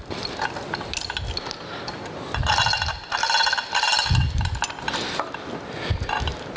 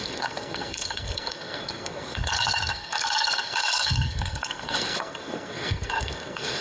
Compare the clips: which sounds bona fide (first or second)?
first